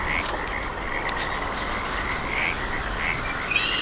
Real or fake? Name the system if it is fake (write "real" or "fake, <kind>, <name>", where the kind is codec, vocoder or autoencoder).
real